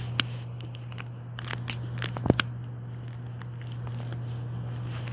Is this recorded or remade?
recorded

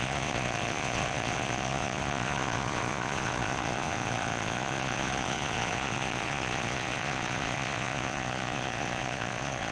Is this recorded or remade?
remade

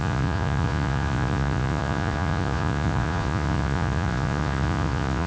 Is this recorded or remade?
remade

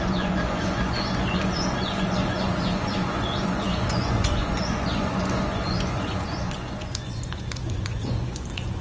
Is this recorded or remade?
remade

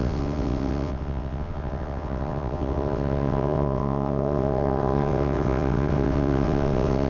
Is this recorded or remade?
remade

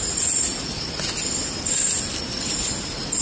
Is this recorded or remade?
recorded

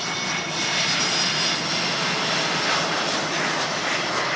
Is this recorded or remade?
recorded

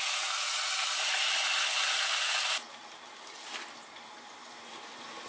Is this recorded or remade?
recorded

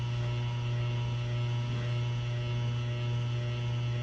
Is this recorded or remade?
recorded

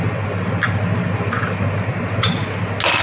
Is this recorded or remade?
recorded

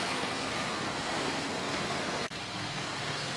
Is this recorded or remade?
remade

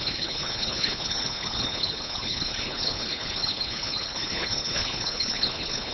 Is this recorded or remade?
remade